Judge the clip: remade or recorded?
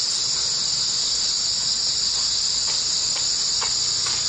recorded